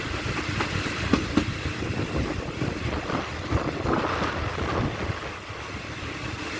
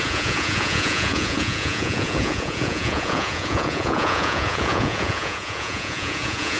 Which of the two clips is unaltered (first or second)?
first